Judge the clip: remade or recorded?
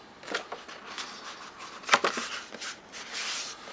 recorded